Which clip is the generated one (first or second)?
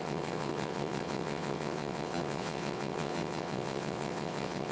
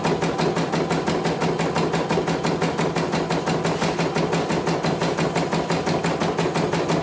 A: first